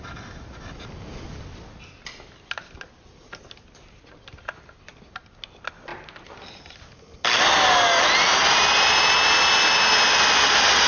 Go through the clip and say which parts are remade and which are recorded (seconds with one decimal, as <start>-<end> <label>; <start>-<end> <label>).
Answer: 0.0-10.9 recorded